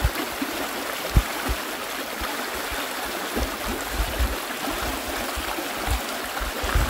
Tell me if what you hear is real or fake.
real